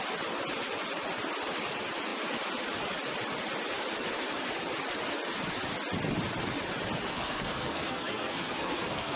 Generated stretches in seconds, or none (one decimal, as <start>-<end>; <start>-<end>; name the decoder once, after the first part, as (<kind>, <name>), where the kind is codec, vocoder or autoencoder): 7.1-9.2 (codec, SNAC)